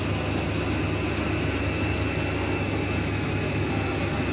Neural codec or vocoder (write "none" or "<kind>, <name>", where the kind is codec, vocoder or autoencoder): none